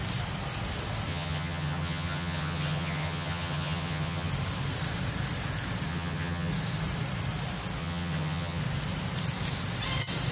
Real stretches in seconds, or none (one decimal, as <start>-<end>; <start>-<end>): 0.0-1.1; 4.3-5.9; 6.5-7.8; 8.6-10.3

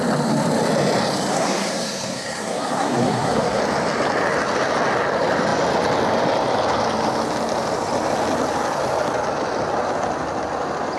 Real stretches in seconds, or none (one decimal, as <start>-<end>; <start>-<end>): 0.0-1.3; 3.6-11.0

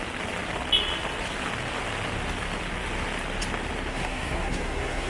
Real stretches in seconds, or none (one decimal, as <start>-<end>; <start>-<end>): 0.0-3.9

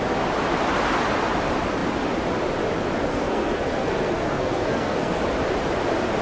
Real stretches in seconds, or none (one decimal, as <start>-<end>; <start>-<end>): 0.0-3.1; 5.2-6.2

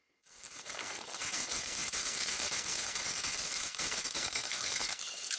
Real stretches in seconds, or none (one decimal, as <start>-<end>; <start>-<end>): none

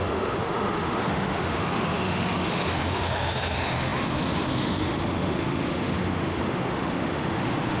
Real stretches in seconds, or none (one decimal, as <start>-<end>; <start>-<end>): none